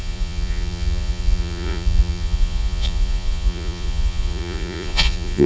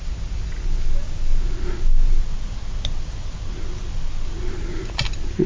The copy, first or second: first